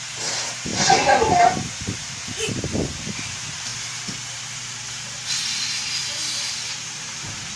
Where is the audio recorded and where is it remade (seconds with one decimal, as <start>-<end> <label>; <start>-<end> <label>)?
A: 0.0-0.7 remade; 0.7-1.4 recorded; 1.4-3.7 remade; 3.7-5.6 recorded; 5.6-7.6 remade